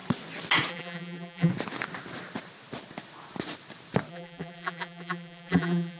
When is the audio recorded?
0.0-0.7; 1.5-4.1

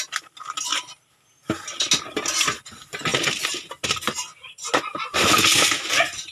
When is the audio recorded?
0.7-2.6; 3.1-5.4

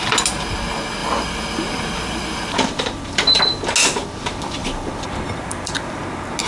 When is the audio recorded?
0.0-1.0; 3.4-4.6; 6.0-6.5

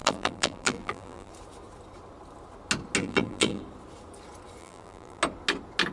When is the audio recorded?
1.3-3.0; 3.6-4.6; 5.2-5.9